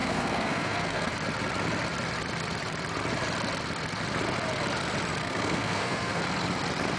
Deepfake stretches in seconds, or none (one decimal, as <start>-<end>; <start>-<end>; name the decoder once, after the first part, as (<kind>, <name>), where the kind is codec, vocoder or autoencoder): 0.0-1.1 (codec, SNAC); 5.2-6.2